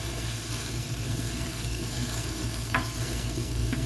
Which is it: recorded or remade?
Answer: remade